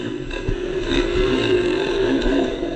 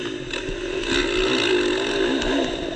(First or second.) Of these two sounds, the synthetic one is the first